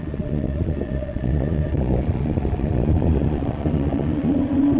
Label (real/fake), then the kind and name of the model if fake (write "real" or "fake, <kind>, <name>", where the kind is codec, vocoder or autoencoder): fake, vocoder, Vocos